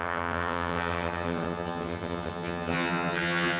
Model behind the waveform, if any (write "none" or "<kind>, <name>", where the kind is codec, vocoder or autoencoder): vocoder, HiFi-GAN